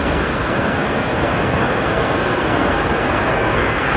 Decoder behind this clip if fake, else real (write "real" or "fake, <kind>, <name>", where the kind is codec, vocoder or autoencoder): fake, codec, SNAC